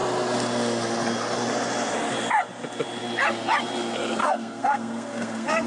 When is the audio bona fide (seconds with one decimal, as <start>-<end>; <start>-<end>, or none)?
0.0-4.2